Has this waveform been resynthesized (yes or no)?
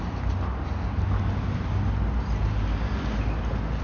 no